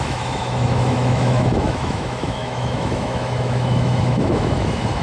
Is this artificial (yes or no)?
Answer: yes